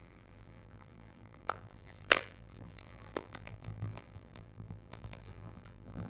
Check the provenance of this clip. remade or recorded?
remade